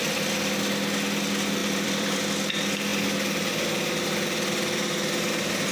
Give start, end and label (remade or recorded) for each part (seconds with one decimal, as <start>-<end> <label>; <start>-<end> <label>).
0.0-1.6 recorded; 1.6-2.2 remade; 2.2-5.7 recorded